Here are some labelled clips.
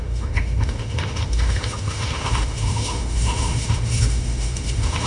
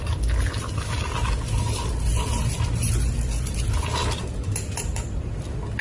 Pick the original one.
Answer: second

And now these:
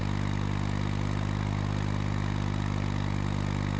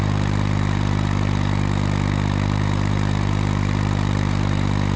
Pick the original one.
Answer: first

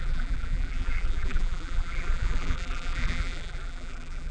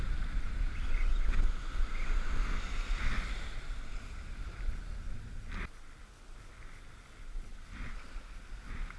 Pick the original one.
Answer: second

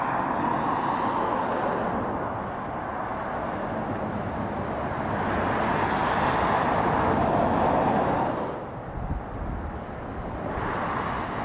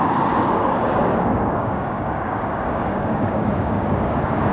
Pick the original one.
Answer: first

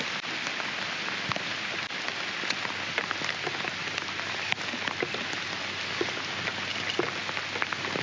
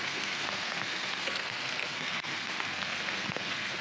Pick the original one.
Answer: first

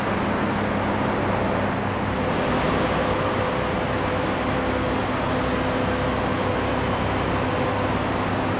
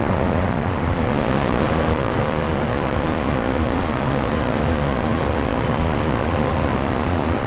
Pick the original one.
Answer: first